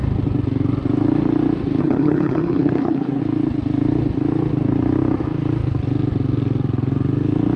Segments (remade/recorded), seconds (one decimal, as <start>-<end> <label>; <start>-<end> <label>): 0.0-1.8 recorded; 1.8-3.2 remade; 3.2-7.6 recorded